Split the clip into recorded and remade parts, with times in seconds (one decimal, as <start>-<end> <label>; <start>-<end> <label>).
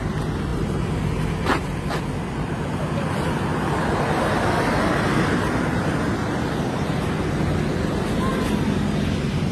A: 0.0-0.5 recorded; 0.5-1.1 remade; 1.1-1.5 recorded; 1.5-4.9 remade; 4.9-5.7 recorded; 5.7-7.0 remade; 7.0-8.3 recorded; 8.3-9.5 remade